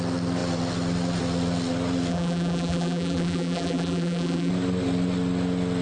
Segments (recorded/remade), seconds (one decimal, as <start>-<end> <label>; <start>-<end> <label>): 0.0-2.1 recorded; 2.1-4.5 remade; 4.5-5.8 recorded